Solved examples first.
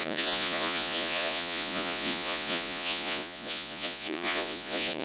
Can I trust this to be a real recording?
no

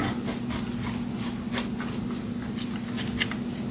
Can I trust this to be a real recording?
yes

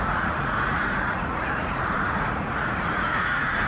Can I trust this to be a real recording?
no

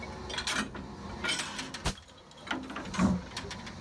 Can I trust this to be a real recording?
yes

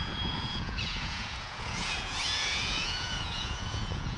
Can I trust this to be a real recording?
no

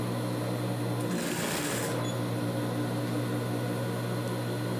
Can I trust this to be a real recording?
yes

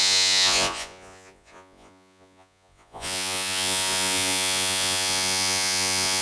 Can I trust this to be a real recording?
no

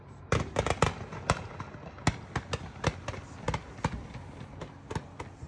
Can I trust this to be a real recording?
yes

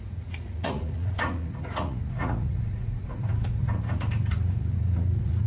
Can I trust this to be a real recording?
no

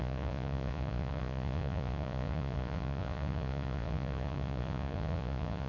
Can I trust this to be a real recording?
no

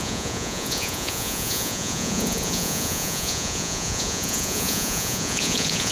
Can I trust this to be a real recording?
no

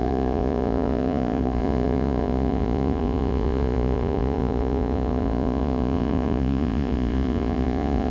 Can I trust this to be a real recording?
no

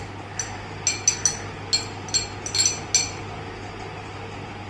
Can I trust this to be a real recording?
yes